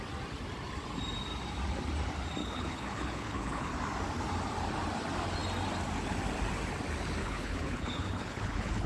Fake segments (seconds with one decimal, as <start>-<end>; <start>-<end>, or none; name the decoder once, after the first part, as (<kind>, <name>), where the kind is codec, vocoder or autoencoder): 2.4-3.7 (codec, HILCodec); 7.2-8.9